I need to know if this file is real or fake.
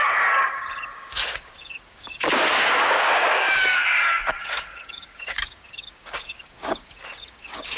fake